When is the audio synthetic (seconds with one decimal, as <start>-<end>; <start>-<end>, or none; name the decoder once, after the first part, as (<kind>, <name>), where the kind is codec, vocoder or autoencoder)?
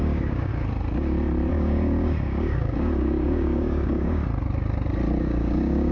0.0-0.5 (codec, DAC); 1.5-4.2; 5.2-5.9